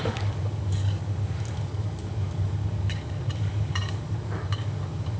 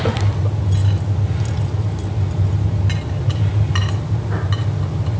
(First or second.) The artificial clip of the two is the first